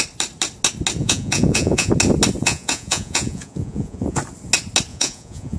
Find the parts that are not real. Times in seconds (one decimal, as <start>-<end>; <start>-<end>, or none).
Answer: 1.0-1.9; 2.4-4.2; 4.9-5.6